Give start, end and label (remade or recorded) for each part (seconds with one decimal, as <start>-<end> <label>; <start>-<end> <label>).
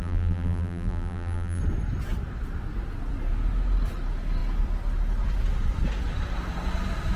0.0-1.6 remade; 1.6-7.2 recorded